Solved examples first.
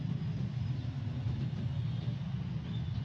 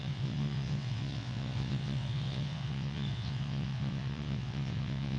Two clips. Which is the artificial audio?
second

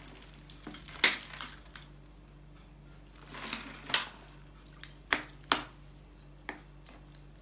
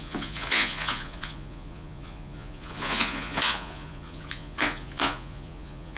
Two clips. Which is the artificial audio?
second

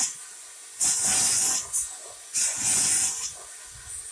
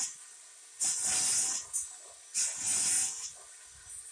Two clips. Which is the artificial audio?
first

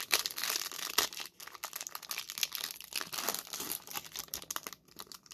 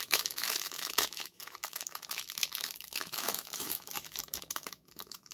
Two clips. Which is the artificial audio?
second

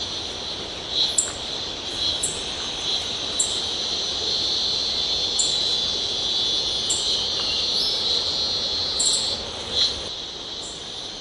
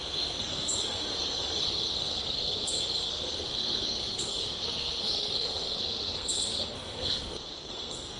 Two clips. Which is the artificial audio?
second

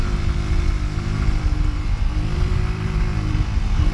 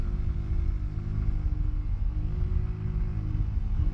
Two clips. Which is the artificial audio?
first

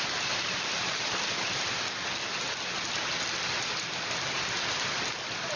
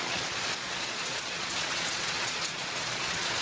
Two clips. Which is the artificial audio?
second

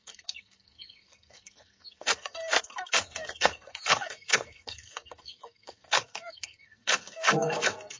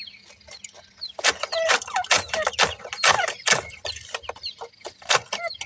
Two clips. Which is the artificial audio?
first